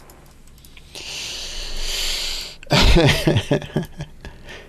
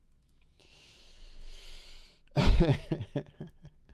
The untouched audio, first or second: first